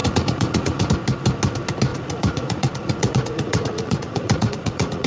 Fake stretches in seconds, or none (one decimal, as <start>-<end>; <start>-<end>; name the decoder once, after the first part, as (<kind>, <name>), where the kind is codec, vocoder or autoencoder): 0.0-0.9 (vocoder, Vocos); 1.9-5.1